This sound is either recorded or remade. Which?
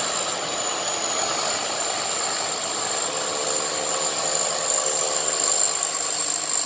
recorded